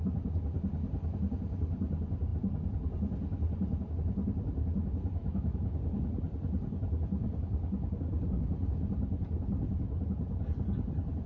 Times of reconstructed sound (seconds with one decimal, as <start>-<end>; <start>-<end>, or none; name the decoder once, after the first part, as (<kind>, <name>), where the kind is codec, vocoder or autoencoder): 5.2-5.8 (autoencoder, DAC-VAE)

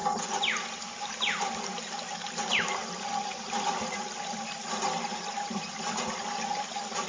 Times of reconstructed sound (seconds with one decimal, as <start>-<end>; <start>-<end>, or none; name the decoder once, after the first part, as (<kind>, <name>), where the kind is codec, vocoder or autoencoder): none

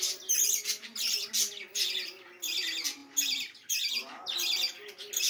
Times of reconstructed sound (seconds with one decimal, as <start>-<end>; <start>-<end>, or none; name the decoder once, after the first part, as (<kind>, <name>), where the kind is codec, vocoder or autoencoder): none

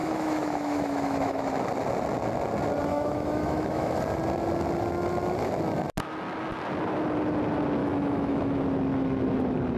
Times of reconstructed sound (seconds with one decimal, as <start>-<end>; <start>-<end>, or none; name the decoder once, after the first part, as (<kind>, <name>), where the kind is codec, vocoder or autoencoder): 0.0-1.5 (autoencoder, DAC-VAE); 2.9-4.0; 7.8-8.6

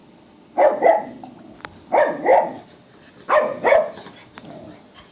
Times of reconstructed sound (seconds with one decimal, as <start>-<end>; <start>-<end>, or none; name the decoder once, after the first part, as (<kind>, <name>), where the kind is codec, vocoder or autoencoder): none

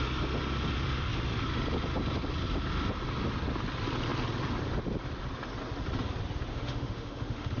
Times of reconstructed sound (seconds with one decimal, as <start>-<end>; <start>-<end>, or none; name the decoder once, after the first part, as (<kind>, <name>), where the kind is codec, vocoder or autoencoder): 6.5-7.6 (autoencoder, DAC-VAE)

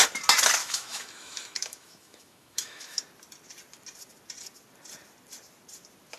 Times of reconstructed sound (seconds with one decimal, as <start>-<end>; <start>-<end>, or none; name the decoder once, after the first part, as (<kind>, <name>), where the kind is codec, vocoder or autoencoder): 0.6-3.0 (autoencoder, DAC-VAE)

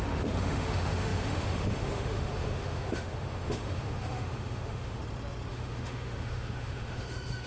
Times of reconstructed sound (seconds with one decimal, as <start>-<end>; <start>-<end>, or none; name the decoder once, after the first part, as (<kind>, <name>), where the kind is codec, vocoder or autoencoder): 0.0-5.0 (autoencoder, DAC-VAE); 5.5-7.5